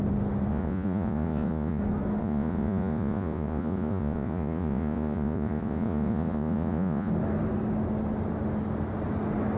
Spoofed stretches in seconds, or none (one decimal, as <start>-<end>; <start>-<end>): 0.5-1.8; 2.2-7.1